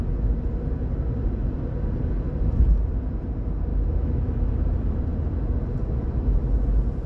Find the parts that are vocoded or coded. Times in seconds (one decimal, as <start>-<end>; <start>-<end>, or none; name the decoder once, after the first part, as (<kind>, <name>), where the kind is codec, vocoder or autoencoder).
3.7-4.5 (autoencoder, DAC-VAE)